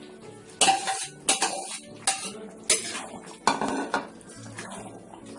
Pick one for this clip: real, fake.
real